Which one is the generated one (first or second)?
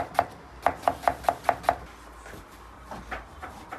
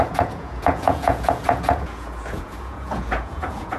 second